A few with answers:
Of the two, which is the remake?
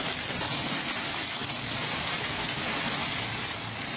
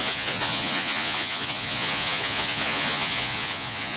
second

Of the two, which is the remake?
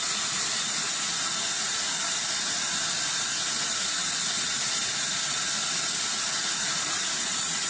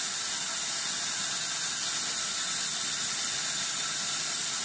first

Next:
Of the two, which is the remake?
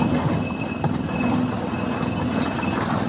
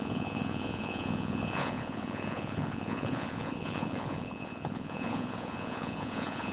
second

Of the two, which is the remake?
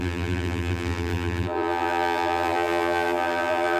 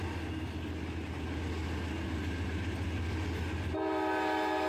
first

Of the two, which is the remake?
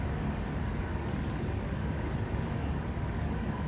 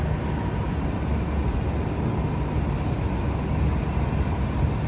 first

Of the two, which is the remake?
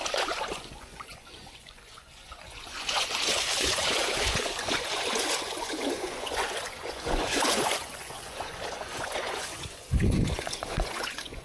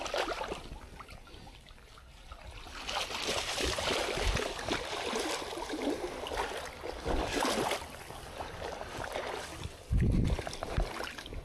first